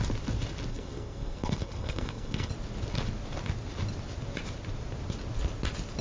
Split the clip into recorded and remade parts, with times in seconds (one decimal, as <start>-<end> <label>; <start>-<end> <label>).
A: 0.0-0.7 recorded; 0.7-2.5 remade; 2.5-6.0 recorded